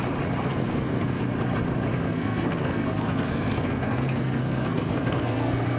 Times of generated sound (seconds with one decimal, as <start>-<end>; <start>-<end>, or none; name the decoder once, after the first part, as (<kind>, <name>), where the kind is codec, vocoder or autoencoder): 0.4-1.2 (codec, SNAC); 1.9-5.8